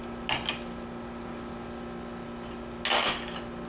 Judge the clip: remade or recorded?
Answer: recorded